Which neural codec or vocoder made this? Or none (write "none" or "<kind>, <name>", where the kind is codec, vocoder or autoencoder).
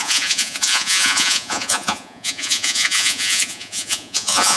vocoder, Vocos